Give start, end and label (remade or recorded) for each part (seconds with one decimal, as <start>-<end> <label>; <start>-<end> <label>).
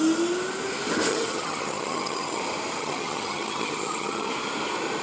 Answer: 0.0-1.1 recorded; 1.1-2.4 remade; 2.4-2.8 recorded; 2.8-4.3 remade; 4.3-5.0 recorded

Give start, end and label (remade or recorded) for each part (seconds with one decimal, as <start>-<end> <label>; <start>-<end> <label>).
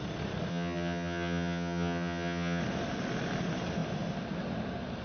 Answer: 0.0-0.5 recorded; 0.5-2.6 remade; 2.6-5.0 recorded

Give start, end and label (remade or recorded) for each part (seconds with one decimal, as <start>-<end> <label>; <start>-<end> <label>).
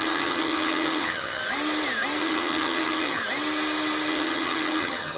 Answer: 0.0-1.4 remade; 1.4-2.2 recorded; 2.2-3.2 remade; 3.2-4.1 recorded; 4.1-5.2 remade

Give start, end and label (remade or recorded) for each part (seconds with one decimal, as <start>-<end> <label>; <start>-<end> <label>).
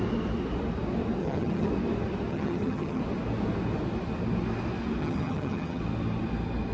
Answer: 0.0-1.2 recorded; 1.2-1.7 remade; 1.7-2.3 recorded; 2.3-3.0 remade; 3.0-5.0 recorded; 5.0-5.8 remade; 5.8-6.7 recorded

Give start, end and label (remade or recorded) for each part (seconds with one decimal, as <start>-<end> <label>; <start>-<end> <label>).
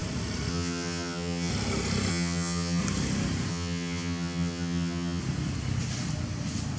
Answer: 0.0-0.5 recorded; 0.5-1.5 remade; 1.5-2.1 recorded; 2.1-2.8 remade; 2.8-3.5 recorded; 3.5-5.2 remade; 5.2-6.8 recorded